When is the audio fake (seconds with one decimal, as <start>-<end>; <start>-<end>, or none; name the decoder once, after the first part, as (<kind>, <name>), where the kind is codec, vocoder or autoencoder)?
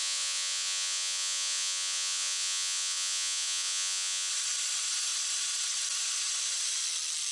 0.0-4.3 (vocoder, Vocos)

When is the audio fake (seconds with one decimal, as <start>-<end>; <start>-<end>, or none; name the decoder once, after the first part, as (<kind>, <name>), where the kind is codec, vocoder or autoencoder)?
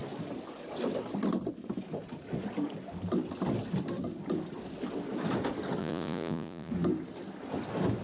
5.8-6.7 (vocoder, Vocos)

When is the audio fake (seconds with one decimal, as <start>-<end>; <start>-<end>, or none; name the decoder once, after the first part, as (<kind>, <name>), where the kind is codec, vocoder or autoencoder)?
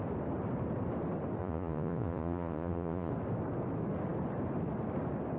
1.4-3.1 (vocoder, Vocos)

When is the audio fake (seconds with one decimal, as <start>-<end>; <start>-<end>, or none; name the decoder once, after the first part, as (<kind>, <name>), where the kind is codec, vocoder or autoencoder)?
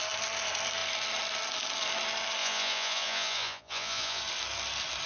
2.4-4.2 (vocoder, Vocos)